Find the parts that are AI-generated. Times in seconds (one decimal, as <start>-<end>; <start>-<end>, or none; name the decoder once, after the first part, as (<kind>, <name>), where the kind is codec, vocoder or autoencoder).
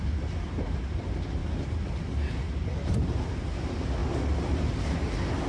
none